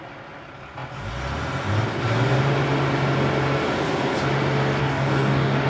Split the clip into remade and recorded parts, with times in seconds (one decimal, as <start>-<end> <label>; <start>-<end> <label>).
0.0-4.8 recorded; 4.8-5.7 remade